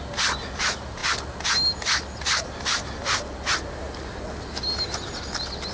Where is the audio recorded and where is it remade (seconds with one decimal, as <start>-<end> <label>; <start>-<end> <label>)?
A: 0.0-5.7 recorded